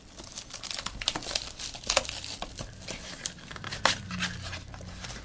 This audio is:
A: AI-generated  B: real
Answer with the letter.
B